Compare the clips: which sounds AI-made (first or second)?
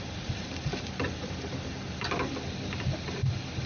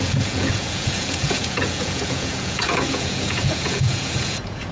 second